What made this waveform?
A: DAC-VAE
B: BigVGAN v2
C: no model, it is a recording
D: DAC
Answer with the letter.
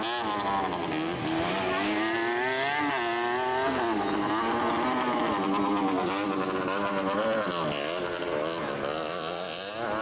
C